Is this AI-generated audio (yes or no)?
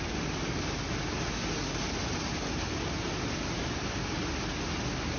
no